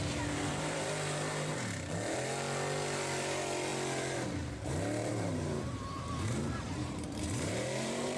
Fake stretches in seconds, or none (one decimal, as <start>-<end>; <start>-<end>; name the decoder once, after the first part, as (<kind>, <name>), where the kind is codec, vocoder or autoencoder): 0.5-1.5 (vocoder, BigVGAN v2); 5.0-8.2